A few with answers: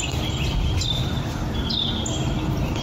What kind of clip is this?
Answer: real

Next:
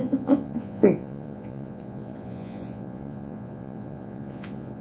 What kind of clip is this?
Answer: fake